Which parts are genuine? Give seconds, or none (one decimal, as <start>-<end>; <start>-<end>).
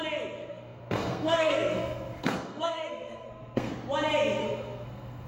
0.0-0.5; 3.7-4.4